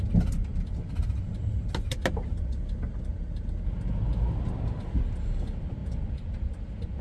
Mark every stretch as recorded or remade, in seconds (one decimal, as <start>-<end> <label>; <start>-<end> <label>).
0.0-7.0 recorded